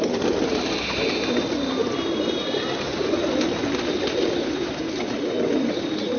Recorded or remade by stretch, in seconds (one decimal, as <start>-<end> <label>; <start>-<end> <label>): 0.0-6.2 recorded